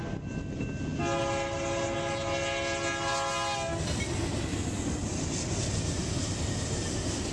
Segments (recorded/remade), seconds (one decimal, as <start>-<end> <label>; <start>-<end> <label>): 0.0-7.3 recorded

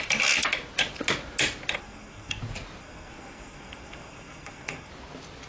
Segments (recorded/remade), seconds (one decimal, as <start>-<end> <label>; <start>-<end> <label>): 0.0-1.8 recorded; 1.8-2.4 remade; 2.4-2.8 recorded; 2.8-4.9 remade; 4.9-5.5 recorded

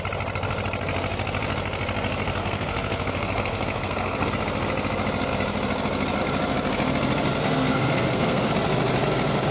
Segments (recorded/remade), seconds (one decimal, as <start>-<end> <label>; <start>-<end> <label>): 0.0-2.4 recorded; 2.4-4.3 remade; 4.3-7.4 recorded; 7.4-8.5 remade; 8.5-9.5 recorded

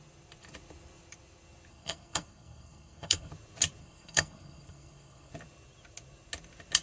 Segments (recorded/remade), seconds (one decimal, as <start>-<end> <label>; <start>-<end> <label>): 0.0-1.7 recorded; 1.7-3.3 remade; 3.3-3.8 recorded; 3.8-5.3 remade; 5.3-6.8 recorded

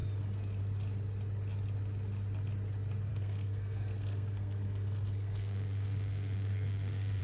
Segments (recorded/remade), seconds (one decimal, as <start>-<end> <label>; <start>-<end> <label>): 0.0-3.1 recorded; 3.1-7.2 remade

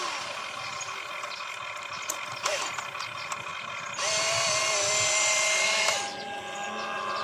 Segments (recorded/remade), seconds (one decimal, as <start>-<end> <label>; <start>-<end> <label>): 0.0-7.2 recorded

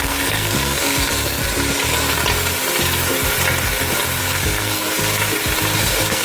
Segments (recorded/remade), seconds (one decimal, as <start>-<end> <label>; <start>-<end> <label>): 0.0-1.4 remade; 1.4-4.2 recorded; 4.2-5.2 remade; 5.2-5.8 recorded; 5.8-6.2 remade

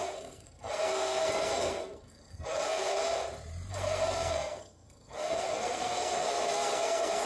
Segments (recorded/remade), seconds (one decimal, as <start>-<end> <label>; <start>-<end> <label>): 0.0-3.2 remade; 3.2-3.7 recorded; 3.7-7.3 remade